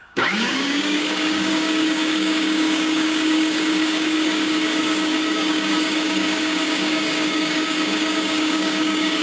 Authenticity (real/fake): fake